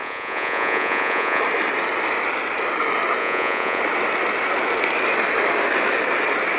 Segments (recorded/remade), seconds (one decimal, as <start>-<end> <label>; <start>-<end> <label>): 0.0-1.4 remade; 1.4-3.2 recorded; 3.2-3.8 remade; 3.8-6.6 recorded